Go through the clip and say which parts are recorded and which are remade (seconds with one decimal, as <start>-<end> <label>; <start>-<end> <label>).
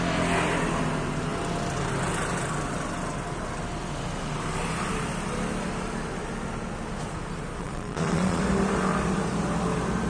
0.0-7.6 recorded; 7.6-8.4 remade; 8.4-10.1 recorded